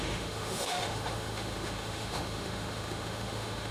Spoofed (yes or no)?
yes